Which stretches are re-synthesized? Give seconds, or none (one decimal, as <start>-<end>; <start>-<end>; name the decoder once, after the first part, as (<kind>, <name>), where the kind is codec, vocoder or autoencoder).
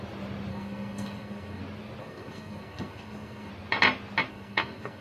0.5-1.6 (codec, SNAC); 2.0-3.5; 4.3-5.0